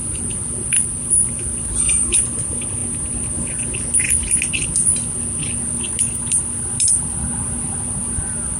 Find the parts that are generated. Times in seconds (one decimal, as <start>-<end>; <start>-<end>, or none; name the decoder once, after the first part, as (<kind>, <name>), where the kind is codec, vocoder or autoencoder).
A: none

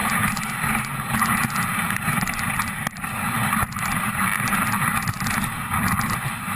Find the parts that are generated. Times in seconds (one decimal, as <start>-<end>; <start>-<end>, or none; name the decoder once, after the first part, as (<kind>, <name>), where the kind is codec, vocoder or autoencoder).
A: none

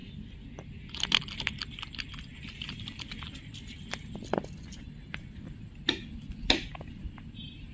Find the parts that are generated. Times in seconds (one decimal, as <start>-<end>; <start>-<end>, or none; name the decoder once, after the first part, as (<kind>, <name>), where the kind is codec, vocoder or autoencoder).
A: none

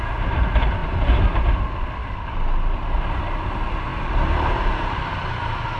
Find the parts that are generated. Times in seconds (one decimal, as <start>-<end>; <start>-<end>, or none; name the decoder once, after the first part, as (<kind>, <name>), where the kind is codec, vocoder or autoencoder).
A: 0.8-1.6 (vocoder, BigVGAN v2); 3.9-4.7